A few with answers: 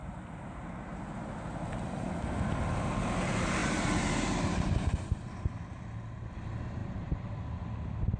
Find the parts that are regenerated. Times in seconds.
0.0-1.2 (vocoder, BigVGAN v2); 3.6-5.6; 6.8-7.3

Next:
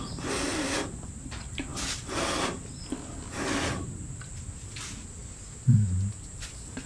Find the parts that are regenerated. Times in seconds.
5.2-6.9 (vocoder, BigVGAN v2)

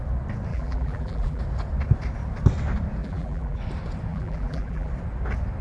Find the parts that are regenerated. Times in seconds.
0.5-1.4 (vocoder, BigVGAN v2); 3.0-3.6; 4.1-4.9

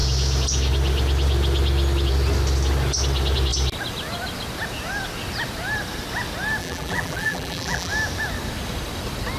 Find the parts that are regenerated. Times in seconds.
6.6-7.9 (vocoder, BigVGAN v2)

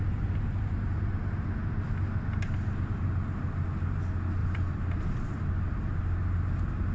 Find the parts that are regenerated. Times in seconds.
4.4-5.5 (vocoder, BigVGAN v2)